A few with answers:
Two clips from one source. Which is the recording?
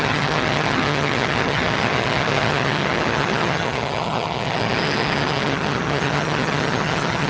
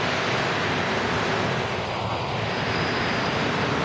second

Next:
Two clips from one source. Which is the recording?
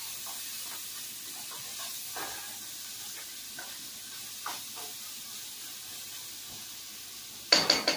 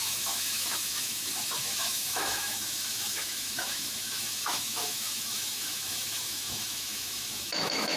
first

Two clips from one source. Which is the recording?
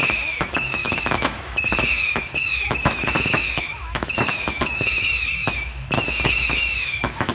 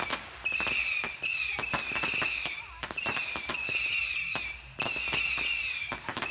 second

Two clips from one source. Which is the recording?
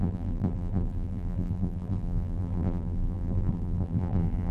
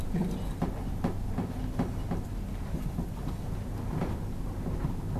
second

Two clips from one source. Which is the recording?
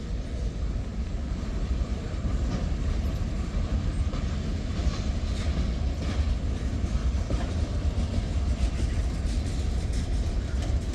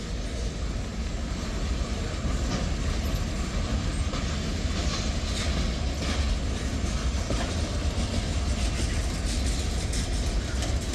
second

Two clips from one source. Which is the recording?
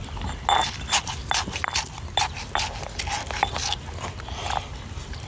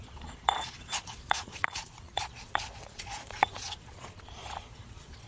first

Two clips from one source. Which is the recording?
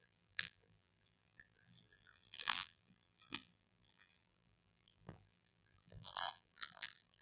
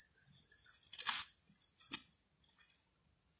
second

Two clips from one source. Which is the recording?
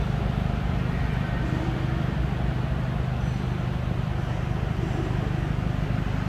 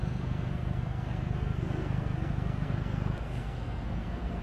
first